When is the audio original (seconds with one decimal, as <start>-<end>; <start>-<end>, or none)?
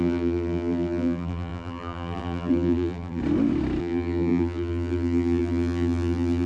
3.2-3.8